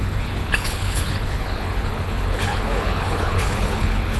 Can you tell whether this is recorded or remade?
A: remade